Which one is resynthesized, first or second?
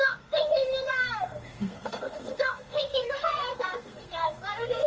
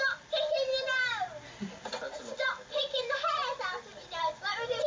first